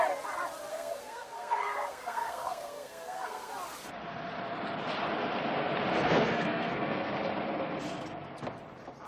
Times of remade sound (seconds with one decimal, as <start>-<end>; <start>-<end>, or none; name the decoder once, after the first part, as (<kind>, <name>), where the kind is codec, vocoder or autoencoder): 0.7-3.5 (codec, SNAC); 5.9-7.1